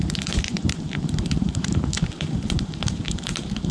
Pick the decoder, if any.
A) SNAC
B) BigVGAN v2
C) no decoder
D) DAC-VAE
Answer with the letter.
B